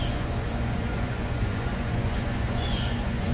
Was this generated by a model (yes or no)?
yes